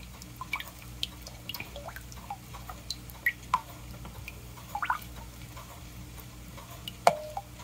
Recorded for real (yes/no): yes